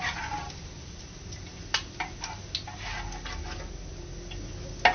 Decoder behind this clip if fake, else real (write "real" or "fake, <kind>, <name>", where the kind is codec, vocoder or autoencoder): real